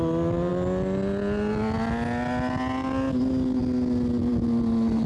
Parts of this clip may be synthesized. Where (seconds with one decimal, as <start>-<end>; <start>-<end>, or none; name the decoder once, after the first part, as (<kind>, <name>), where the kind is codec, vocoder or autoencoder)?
4.2-5.1 (vocoder, BigVGAN v2)